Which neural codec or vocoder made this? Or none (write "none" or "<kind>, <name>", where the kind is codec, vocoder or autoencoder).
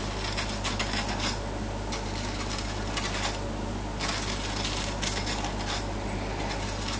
none